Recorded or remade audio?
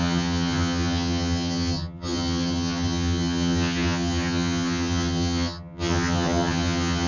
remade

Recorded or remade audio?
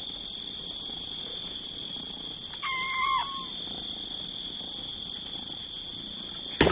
recorded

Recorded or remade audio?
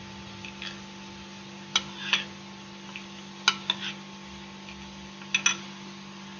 recorded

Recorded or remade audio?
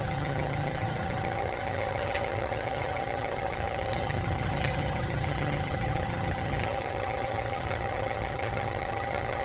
remade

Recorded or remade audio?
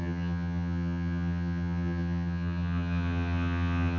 remade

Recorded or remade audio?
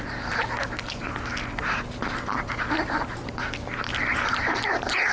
recorded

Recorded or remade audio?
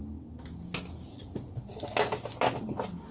recorded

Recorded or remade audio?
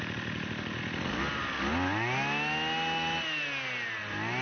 recorded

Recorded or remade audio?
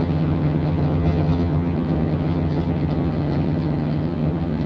remade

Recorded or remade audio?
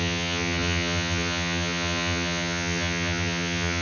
remade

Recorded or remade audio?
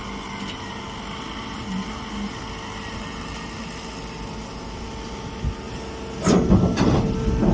recorded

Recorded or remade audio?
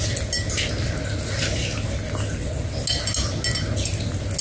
recorded